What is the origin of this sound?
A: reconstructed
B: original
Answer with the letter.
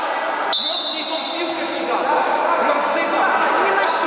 B